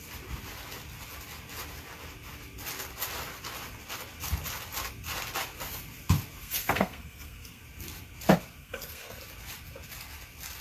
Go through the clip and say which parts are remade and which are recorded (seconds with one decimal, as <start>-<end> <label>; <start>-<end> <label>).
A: 0.0-6.4 recorded; 6.4-7.6 remade; 7.6-8.6 recorded; 8.6-9.2 remade; 9.2-10.6 recorded